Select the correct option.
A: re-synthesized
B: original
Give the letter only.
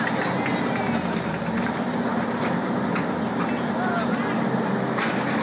B